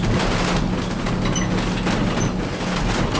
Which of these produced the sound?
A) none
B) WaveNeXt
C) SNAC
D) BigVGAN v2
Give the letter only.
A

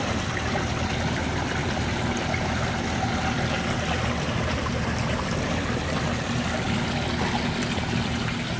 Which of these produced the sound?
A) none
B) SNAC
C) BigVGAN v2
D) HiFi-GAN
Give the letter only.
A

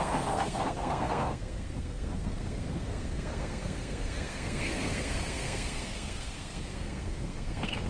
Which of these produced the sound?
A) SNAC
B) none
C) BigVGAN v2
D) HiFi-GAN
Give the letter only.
A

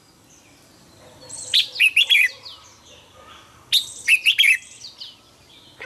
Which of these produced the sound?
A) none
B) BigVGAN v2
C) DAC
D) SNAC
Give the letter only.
A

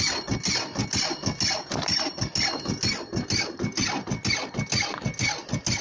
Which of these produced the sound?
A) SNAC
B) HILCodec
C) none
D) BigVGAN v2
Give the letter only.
C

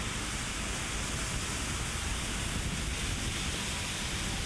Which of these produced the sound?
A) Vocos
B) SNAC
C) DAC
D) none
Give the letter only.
D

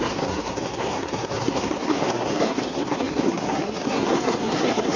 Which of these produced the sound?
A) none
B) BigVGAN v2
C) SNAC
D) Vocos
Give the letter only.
C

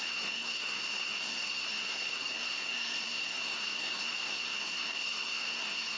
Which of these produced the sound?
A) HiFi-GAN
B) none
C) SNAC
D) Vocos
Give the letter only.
C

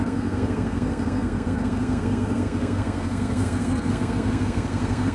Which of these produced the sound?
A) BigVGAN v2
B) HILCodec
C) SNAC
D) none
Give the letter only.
C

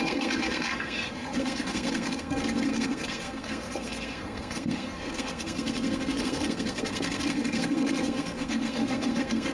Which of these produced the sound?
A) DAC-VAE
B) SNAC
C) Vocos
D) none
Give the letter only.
B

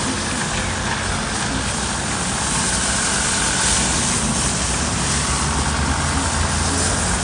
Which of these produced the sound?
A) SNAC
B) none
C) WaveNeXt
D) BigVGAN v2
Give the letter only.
B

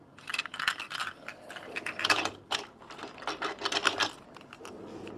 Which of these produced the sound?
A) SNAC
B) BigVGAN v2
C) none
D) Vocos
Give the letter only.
C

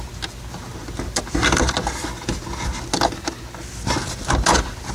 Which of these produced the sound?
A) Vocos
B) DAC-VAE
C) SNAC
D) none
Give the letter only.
D